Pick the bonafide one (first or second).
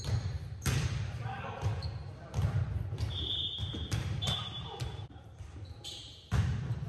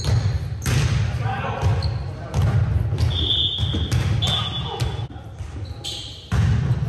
second